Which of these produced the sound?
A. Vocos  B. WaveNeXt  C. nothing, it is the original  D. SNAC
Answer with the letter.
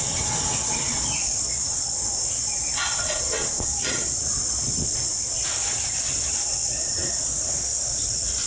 B